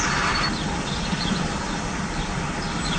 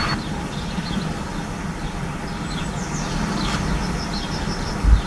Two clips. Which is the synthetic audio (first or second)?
first